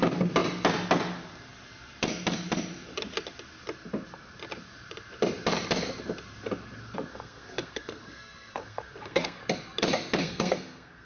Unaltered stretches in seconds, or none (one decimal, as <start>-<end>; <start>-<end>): 0.0-7.1; 9.4-10.2